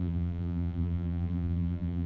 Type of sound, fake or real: fake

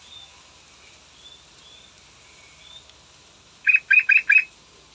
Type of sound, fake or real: real